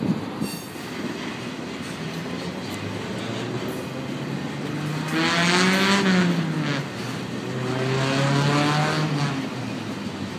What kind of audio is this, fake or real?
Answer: real